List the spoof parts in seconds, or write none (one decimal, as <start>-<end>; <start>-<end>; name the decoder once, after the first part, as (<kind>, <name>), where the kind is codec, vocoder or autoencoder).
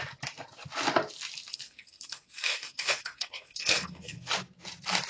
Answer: 1.5-4.3 (codec, SNAC)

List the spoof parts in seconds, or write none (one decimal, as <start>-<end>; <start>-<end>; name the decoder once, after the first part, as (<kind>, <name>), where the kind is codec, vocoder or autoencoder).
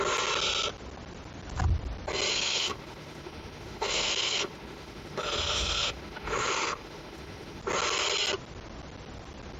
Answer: 2.3-7.6 (autoencoder, DAC-VAE)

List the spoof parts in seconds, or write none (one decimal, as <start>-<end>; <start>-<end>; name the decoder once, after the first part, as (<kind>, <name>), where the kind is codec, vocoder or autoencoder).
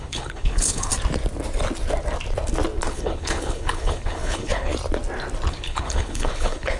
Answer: 0.0-0.9 (codec, HILCodec); 2.9-4.7; 5.5-6.8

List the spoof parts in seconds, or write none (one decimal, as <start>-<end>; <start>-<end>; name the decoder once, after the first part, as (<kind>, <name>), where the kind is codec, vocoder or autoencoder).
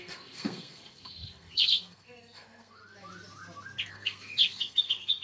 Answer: 0.0-2.8 (codec, SNAC); 3.9-5.2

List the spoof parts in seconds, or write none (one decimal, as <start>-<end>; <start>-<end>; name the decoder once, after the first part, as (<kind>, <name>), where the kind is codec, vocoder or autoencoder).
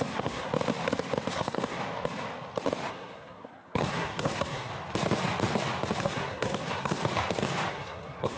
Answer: 0.0-0.5 (codec, SNAC); 1.3-1.8; 2.9-4.7; 6.0-7.0; 7.7-8.4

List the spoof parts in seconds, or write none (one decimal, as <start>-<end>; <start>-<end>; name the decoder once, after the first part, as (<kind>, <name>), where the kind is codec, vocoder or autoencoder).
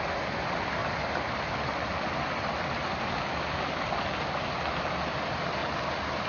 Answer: none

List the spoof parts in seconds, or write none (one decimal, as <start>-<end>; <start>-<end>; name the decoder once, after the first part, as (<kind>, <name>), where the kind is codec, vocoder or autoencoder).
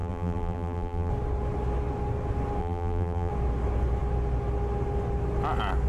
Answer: 0.0-1.1 (vocoder, BigVGAN v2); 2.6-3.3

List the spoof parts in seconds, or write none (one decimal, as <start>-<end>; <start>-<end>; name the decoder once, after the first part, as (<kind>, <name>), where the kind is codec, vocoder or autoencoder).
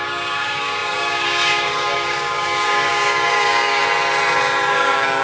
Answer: 0.0-3.8 (codec, DAC); 4.7-5.2